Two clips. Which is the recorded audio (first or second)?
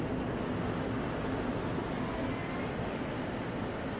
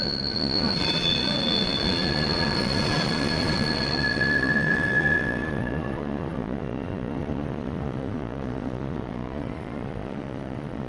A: first